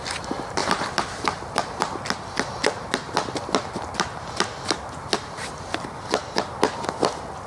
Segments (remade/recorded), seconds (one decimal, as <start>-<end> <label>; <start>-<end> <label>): 0.0-7.5 recorded